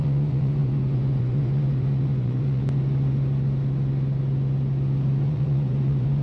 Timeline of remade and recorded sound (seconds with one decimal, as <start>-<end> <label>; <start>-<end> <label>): 0.0-2.6 remade; 2.6-5.2 recorded; 5.2-6.2 remade